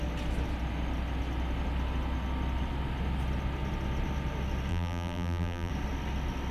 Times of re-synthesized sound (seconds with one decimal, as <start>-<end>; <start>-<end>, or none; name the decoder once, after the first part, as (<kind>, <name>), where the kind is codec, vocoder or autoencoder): 4.7-5.7 (vocoder, BigVGAN v2)